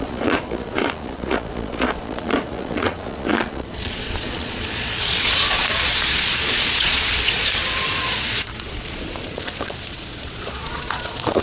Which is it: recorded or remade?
remade